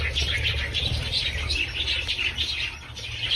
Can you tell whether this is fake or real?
real